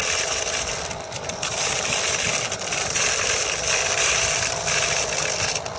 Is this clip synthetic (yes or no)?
yes